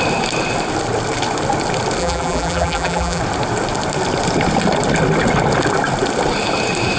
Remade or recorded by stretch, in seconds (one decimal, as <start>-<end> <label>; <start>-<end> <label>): 0.0-2.0 recorded; 2.0-3.2 remade; 3.2-7.0 recorded